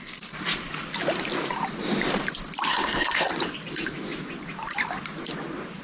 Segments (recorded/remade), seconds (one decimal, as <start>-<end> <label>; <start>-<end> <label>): 0.0-2.7 recorded; 2.7-3.3 remade; 3.3-5.8 recorded